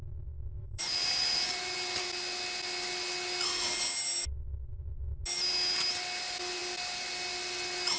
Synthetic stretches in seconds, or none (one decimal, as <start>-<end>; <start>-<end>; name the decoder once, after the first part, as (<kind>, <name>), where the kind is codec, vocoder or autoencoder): 0.6-2.0 (vocoder, BigVGAN v2)